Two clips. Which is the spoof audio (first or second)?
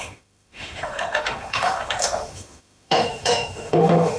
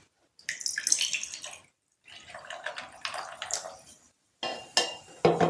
first